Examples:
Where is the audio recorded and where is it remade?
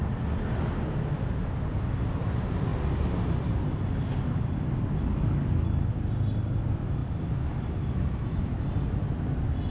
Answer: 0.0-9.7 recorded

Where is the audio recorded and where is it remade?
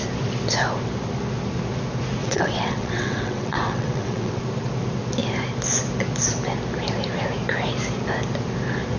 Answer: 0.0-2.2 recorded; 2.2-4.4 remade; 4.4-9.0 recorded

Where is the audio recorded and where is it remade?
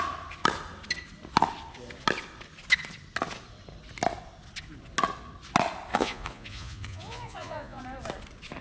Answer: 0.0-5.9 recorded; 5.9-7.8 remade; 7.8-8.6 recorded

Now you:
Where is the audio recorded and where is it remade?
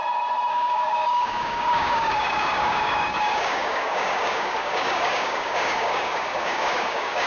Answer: 0.0-0.5 recorded; 0.5-7.3 remade